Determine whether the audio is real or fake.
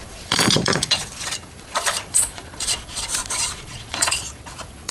fake